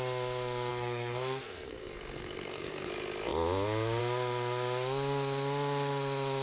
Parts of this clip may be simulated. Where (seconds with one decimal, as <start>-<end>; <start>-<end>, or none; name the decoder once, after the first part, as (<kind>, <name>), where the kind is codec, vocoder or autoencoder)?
0.7-2.9 (codec, SNAC)